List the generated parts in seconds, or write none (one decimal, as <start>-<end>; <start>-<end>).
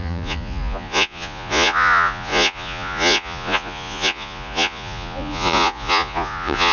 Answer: 0.0-6.7